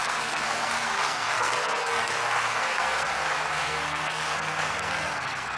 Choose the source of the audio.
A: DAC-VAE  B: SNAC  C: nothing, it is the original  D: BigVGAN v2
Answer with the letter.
B